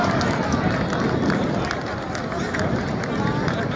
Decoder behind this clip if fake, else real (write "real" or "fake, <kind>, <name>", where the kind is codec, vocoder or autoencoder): real